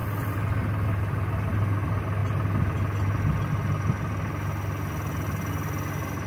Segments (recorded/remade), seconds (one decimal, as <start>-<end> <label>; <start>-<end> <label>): 0.0-0.6 remade; 0.6-6.3 recorded